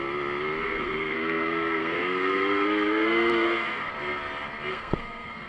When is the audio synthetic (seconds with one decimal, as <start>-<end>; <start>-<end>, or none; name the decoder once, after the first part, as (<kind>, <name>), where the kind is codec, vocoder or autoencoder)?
0.6-3.9 (codec, SNAC); 4.7-5.5

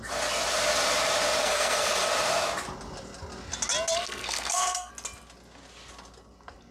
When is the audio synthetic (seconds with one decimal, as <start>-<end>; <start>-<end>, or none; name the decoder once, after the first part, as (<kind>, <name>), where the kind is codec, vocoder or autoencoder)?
1.4-2.1 (codec, SNAC); 4.0-4.9

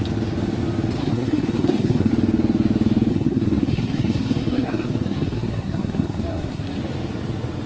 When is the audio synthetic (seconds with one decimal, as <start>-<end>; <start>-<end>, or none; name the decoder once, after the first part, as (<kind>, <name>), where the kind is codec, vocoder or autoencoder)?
1.0-2.1 (codec, SNAC); 3.1-6.8

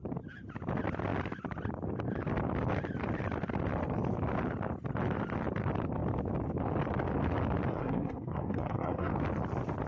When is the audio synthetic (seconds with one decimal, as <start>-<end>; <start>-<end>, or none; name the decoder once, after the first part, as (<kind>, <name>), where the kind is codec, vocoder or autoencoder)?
7.7-9.1 (codec, SNAC)

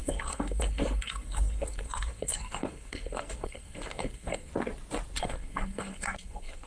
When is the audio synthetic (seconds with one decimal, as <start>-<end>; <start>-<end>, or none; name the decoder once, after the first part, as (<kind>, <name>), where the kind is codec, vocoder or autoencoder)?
0.0-4.5 (codec, SNAC); 5.2-6.7

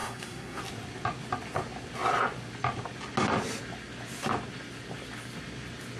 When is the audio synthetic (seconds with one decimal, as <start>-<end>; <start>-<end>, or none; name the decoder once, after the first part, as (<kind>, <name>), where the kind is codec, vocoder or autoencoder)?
0.0-0.6 (codec, SNAC)

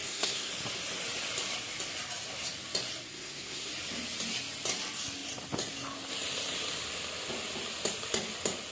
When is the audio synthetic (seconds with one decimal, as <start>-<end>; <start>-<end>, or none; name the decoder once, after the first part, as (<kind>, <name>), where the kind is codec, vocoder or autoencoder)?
0.0-0.5 (codec, SNAC); 3.1-3.7